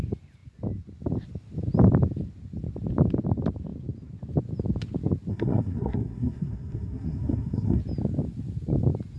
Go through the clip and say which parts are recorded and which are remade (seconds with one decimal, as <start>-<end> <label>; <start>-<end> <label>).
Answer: 0.0-5.3 recorded; 5.3-7.8 remade; 7.8-9.2 recorded